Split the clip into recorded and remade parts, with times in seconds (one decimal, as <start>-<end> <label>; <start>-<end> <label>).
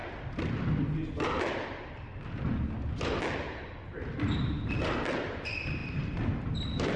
0.0-7.0 recorded